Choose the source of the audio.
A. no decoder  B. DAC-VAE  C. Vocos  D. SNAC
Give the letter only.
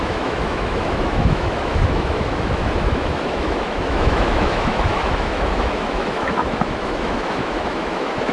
B